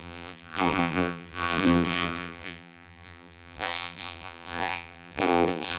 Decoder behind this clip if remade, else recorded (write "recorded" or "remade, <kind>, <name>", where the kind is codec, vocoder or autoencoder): remade, vocoder, BigVGAN v2